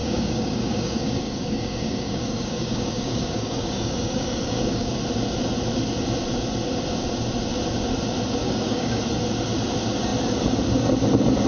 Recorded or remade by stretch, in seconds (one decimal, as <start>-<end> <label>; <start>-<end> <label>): 0.0-4.9 remade; 4.9-8.4 recorded; 8.4-9.0 remade; 9.0-11.5 recorded